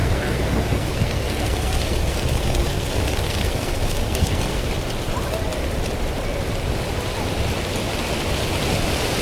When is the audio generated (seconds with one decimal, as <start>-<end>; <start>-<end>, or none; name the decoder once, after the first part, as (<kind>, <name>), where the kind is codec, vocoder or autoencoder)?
0.0-4.7 (codec, SNAC)